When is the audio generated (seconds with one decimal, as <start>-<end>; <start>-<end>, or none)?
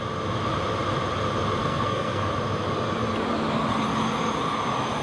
1.6-2.3